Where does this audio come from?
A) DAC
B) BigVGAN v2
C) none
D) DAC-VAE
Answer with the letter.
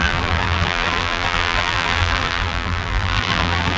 B